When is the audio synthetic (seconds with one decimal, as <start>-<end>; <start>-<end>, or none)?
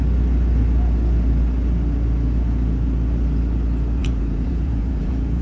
4.0-5.4